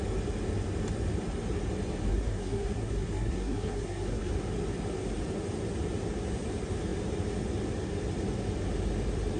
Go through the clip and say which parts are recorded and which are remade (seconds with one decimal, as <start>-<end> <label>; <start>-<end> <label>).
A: 0.0-2.1 recorded; 2.1-4.3 remade; 4.3-9.4 recorded